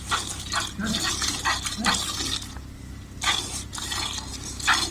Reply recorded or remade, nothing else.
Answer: recorded